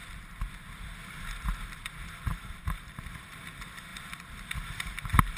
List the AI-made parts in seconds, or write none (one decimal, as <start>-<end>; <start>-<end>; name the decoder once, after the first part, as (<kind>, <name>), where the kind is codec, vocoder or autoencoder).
2.3-3.4 (vocoder, BigVGAN v2)